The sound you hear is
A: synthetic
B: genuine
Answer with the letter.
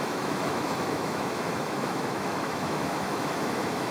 A